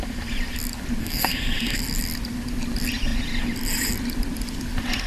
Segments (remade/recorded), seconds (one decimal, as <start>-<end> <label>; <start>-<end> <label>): 0.0-1.0 recorded; 1.0-1.8 remade; 1.8-5.1 recorded